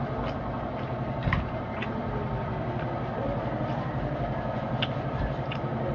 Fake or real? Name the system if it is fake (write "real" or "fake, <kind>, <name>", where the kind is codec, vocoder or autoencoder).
real